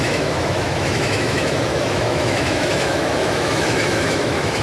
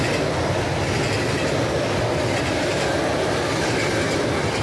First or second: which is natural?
second